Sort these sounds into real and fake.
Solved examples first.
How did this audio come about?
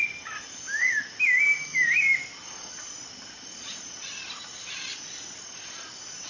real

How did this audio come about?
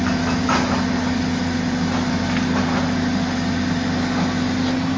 real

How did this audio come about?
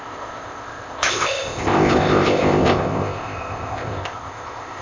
fake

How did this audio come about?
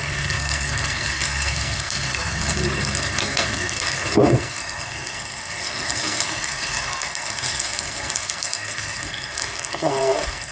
fake